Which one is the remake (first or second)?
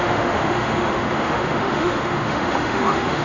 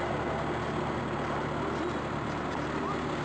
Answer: first